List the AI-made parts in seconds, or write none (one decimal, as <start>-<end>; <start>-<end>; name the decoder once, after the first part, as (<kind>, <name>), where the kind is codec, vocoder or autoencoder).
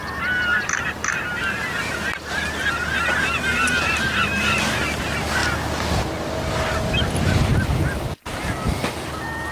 3.5-5.0 (vocoder, BigVGAN v2)